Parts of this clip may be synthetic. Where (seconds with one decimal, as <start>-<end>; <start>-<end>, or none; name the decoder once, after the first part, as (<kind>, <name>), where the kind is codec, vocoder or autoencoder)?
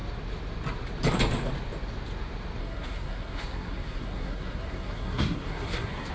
2.6-6.1 (codec, SNAC)